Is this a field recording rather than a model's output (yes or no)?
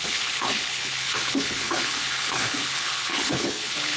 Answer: no